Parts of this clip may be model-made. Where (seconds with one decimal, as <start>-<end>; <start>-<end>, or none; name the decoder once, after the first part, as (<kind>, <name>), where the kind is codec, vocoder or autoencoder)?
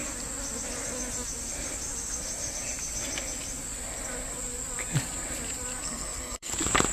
5.8-6.5 (codec, SNAC)